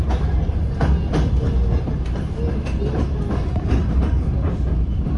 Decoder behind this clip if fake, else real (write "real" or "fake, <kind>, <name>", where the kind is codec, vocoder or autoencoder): real